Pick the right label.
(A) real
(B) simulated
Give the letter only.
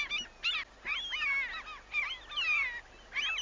A